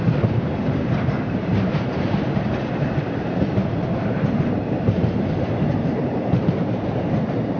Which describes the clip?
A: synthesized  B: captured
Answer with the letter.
A